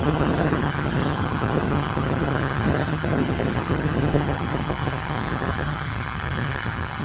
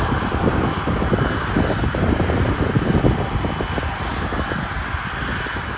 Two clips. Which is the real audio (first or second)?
second